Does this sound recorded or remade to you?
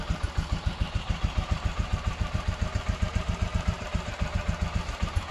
remade